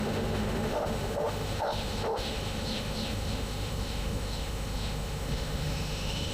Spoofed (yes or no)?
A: yes